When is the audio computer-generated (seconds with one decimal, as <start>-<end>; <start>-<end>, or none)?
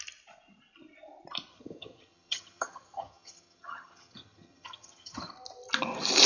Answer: 1.5-5.3